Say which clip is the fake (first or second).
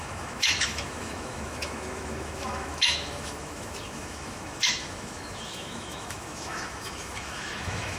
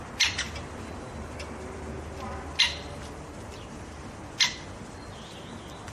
first